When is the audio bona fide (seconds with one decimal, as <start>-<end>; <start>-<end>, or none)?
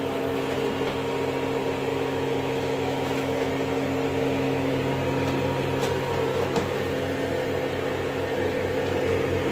0.0-1.9; 3.5-4.1; 4.8-6.3; 6.9-9.5